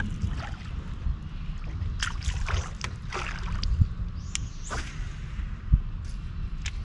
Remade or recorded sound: recorded